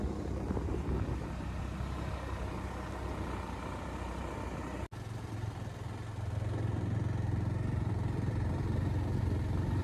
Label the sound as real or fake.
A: real